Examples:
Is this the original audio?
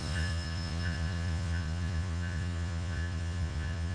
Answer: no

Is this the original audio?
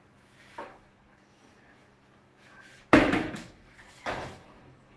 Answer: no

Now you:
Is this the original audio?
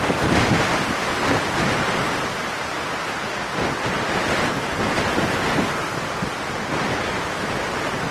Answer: yes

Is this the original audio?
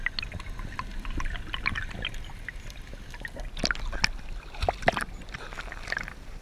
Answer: yes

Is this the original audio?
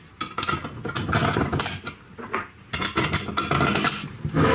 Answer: yes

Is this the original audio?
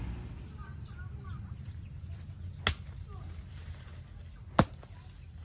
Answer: yes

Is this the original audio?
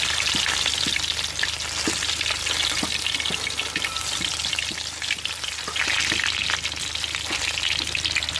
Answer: yes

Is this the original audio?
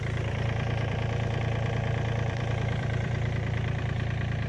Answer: no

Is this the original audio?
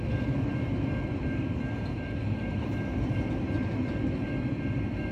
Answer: no